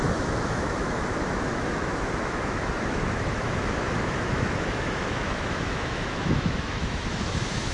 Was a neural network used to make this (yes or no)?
yes